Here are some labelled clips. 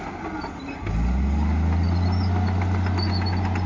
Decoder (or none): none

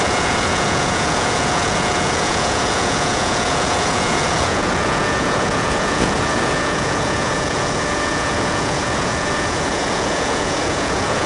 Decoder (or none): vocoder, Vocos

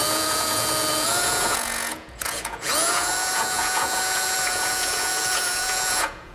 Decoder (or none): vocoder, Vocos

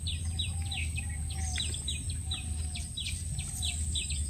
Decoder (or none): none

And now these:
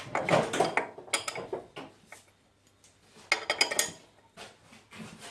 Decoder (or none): none